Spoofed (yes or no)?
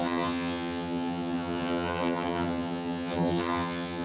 yes